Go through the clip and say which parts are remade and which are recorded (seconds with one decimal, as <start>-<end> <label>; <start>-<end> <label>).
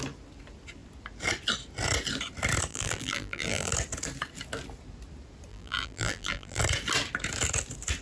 0.0-2.7 recorded; 2.7-3.7 remade; 3.7-5.5 recorded; 5.5-6.6 remade; 6.6-8.0 recorded